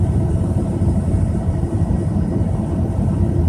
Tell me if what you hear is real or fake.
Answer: fake